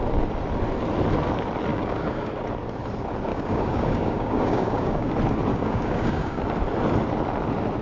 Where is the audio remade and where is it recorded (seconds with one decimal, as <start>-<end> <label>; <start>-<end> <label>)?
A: 0.0-1.7 recorded; 1.7-2.3 remade; 2.3-3.3 recorded; 3.3-5.1 remade; 5.1-5.5 recorded; 5.5-6.4 remade; 6.4-7.8 recorded